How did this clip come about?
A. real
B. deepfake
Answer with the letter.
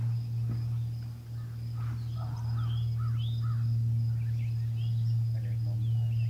A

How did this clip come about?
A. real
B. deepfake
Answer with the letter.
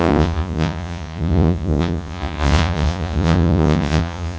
B